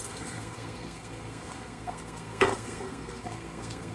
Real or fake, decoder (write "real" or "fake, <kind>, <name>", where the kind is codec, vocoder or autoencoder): fake, codec, SNAC